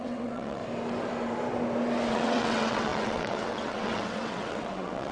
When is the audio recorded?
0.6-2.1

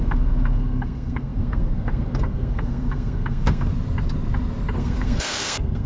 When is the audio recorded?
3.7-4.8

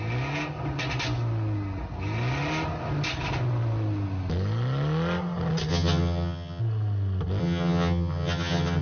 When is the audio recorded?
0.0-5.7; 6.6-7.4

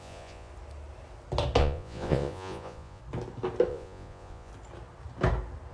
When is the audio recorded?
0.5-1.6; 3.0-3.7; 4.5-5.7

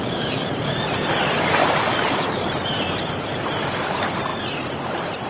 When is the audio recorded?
4.3-5.3